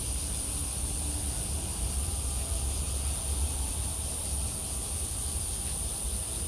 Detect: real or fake real